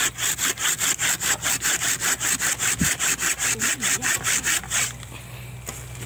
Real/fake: real